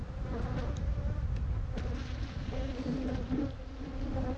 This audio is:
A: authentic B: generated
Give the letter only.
A